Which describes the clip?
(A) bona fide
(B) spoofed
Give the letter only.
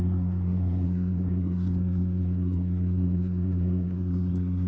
B